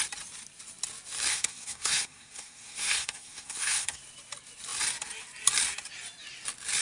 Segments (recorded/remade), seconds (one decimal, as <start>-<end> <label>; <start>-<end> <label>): 0.0-1.3 recorded; 1.3-4.0 remade; 4.0-6.8 recorded